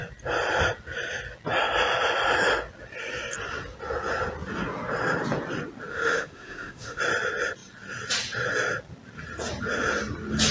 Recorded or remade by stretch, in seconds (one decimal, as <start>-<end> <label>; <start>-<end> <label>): 0.0-5.9 recorded; 5.9-7.0 remade; 7.0-10.5 recorded